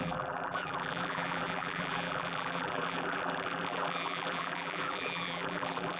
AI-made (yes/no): yes